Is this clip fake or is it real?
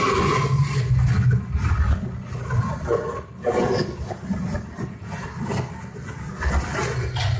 real